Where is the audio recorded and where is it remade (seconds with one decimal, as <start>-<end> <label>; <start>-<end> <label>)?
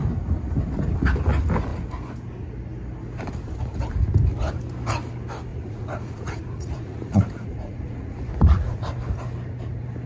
0.0-5.5 recorded; 5.5-8.8 remade; 8.8-10.1 recorded